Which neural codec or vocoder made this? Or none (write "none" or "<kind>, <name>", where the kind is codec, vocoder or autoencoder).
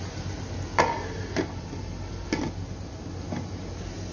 none